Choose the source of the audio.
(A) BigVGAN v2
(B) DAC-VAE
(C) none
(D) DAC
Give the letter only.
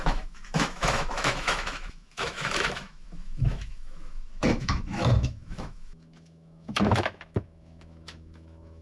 B